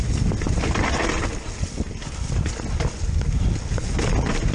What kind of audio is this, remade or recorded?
recorded